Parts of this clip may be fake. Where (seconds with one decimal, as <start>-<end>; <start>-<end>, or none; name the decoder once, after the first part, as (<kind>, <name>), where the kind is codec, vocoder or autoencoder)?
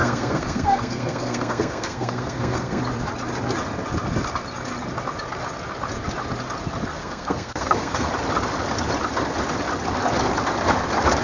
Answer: 0.0-2.8 (codec, SNAC); 7.0-8.1